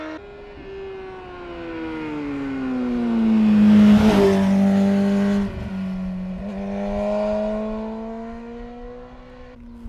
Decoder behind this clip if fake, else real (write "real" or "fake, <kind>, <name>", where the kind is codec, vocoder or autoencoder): real